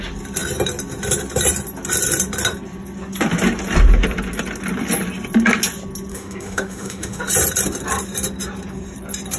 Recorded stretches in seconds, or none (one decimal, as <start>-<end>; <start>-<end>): 0.0-6.1; 7.2-9.4